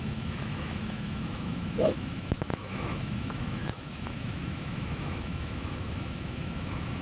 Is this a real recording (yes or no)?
no